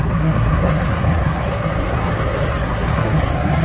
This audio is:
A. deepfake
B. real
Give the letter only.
A